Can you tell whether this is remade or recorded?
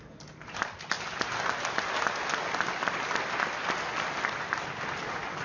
recorded